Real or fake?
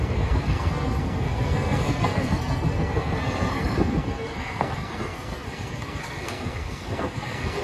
fake